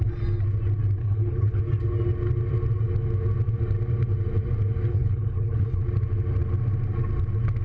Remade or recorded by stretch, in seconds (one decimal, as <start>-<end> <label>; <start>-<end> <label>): 0.0-1.0 recorded; 1.0-1.6 remade; 1.6-4.9 recorded; 4.9-5.8 remade; 5.8-7.6 recorded